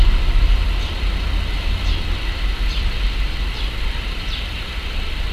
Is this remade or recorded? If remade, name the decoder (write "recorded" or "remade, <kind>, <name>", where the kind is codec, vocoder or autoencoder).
remade, vocoder, BigVGAN v2